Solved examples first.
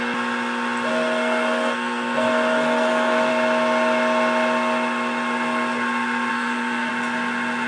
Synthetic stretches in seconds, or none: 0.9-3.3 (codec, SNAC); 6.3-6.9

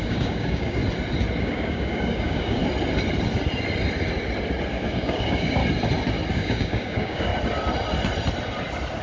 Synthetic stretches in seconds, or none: 0.0-0.8 (codec, DAC); 1.4-2.6; 4.7-5.6; 6.3-7.3

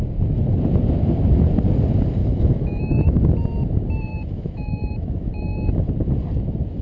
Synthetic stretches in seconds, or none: 2.2-3.2 (autoencoder, DAC-VAE); 4.1-5.7

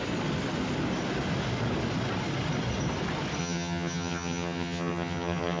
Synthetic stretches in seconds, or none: 3.4-5.6 (vocoder, HiFi-GAN)

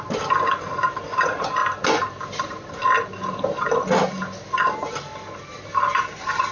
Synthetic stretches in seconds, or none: 0.0-1.6 (vocoder, BigVGAN v2); 2.4-2.8; 4.6-5.1; 6.0-6.5